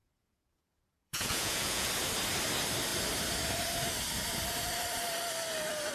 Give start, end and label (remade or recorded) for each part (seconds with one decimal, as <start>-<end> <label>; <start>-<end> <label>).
0.0-1.9 remade; 1.9-5.9 recorded